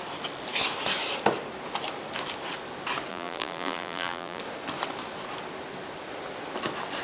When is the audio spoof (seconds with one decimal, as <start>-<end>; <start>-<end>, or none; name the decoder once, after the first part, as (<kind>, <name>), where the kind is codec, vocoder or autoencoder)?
3.1-4.4 (vocoder, BigVGAN v2)